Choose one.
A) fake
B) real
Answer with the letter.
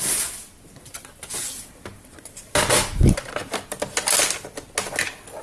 B